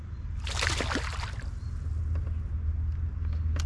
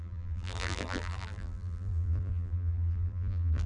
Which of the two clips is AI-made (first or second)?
second